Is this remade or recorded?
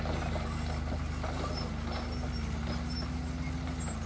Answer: recorded